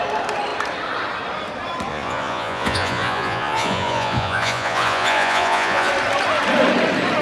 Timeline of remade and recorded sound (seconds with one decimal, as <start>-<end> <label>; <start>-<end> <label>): 0.0-1.9 recorded; 1.9-5.9 remade; 5.9-7.2 recorded